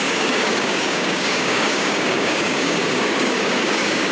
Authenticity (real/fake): fake